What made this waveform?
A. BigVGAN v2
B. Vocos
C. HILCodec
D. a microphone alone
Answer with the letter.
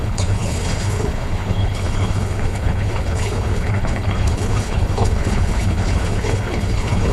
C